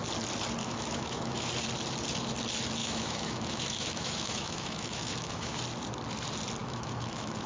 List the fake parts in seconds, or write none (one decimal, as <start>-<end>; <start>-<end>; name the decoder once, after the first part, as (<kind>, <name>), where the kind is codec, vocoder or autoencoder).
0.6-1.5 (autoencoder, DAC-VAE); 2.8-5.6; 6.6-7.5